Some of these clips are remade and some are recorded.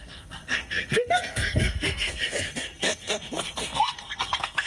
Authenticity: remade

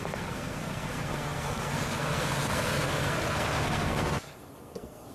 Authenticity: remade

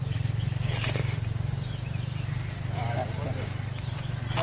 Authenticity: recorded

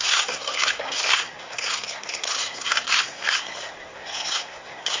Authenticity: remade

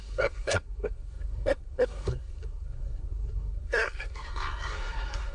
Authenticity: remade